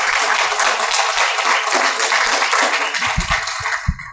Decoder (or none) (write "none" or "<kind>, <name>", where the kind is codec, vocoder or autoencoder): none